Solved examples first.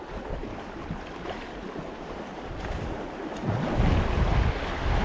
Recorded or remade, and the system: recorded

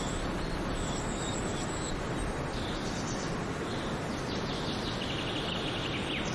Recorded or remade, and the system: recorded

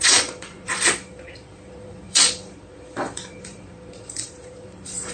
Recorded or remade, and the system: remade, vocoder, Vocos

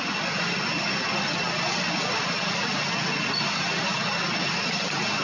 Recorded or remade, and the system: recorded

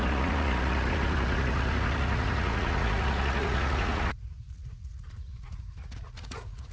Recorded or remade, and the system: remade, vocoder, Vocos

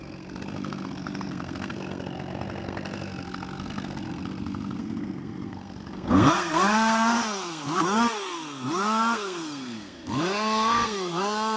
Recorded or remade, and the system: remade, codec, SNAC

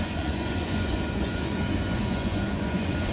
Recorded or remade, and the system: remade, vocoder, Vocos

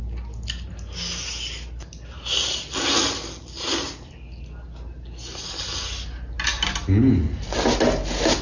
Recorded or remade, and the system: recorded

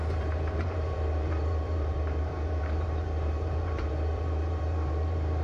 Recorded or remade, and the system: remade, vocoder, BigVGAN v2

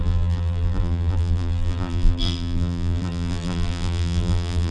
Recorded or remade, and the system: remade, vocoder, BigVGAN v2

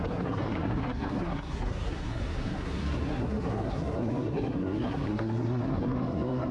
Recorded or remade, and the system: remade, codec, SNAC